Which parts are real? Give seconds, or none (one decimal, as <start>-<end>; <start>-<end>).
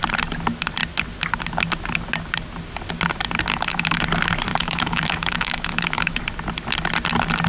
0.0-3.5; 4.0-4.5; 6.2-7.5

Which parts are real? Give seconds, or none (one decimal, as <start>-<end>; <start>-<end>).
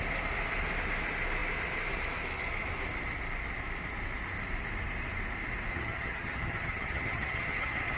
0.0-5.7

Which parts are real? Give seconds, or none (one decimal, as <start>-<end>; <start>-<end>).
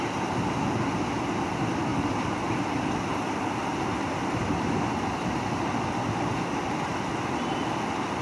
0.0-8.2